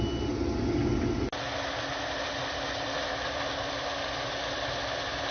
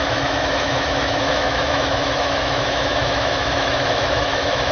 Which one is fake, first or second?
second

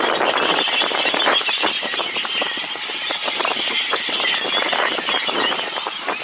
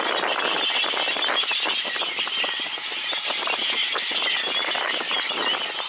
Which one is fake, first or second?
first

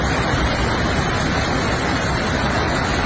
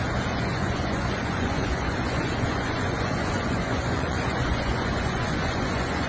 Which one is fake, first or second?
second